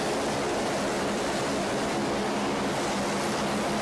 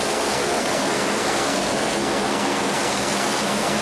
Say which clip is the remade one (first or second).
second